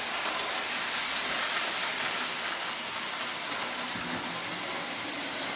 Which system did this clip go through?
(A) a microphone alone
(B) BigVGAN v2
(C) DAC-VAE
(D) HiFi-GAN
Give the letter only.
A